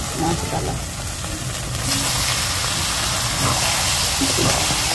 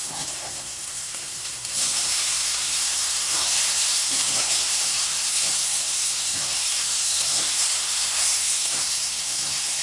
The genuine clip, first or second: first